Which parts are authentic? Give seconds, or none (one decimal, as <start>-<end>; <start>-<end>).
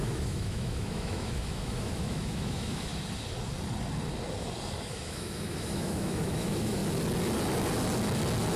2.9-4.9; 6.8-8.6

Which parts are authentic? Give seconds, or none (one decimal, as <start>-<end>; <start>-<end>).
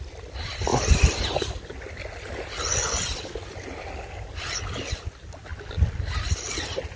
0.0-7.0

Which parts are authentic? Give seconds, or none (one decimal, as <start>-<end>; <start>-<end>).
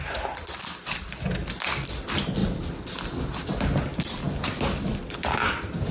0.0-5.9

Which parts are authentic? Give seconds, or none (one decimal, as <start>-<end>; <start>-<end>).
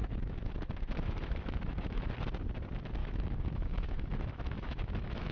2.1-3.0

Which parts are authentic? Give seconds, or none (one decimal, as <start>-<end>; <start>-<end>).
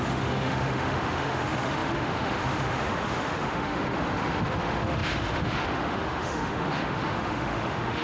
none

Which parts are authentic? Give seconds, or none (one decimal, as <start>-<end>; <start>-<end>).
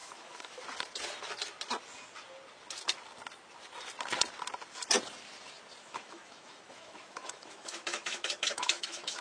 0.6-5.8